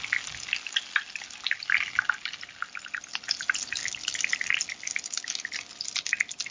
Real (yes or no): yes